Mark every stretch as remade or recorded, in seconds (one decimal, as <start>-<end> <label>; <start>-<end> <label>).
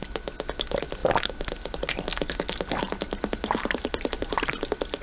0.0-5.0 recorded